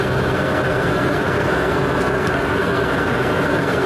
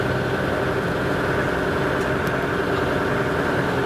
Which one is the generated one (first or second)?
first